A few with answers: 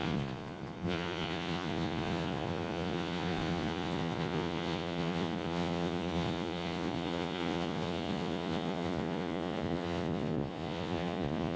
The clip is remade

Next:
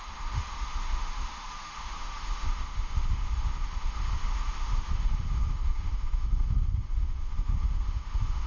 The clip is remade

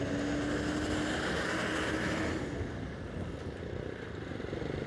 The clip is recorded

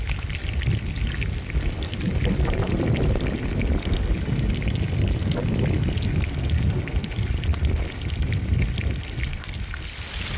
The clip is recorded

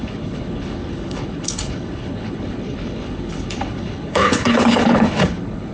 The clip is remade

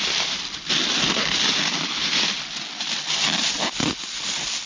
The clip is recorded